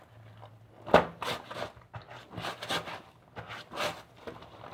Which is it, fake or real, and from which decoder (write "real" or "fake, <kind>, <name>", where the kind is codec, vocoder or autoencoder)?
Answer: real